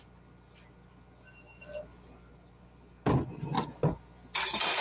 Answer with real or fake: real